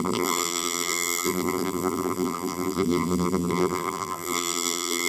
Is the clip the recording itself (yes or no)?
no